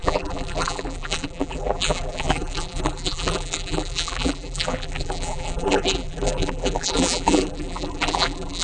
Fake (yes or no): yes